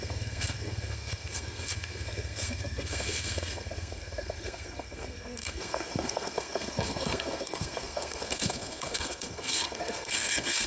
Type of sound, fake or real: fake